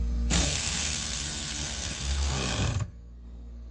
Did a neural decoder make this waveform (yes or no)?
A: yes